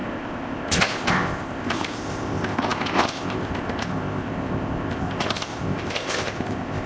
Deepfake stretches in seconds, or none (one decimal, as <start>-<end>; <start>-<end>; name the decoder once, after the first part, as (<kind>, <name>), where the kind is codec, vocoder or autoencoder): 0.0-6.9 (codec, ZipCodec)